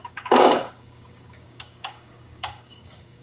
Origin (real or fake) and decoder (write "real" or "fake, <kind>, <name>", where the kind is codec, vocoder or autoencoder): fake, codec, DAC